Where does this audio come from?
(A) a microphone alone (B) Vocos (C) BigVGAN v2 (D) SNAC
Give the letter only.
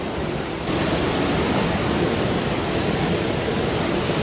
C